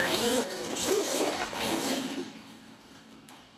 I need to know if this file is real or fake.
fake